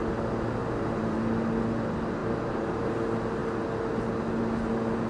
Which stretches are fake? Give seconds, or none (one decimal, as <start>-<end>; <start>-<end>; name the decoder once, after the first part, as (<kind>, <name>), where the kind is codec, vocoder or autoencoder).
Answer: 0.6-1.2 (vocoder, BigVGAN v2); 2.2-2.9